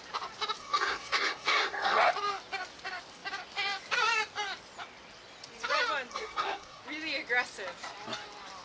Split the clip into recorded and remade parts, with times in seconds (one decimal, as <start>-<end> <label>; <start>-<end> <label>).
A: 0.0-0.6 recorded; 0.6-2.1 remade; 2.1-6.1 recorded; 6.1-6.8 remade; 6.8-8.6 recorded